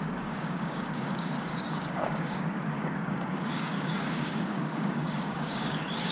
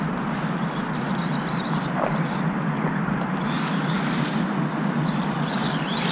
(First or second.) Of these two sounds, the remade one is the first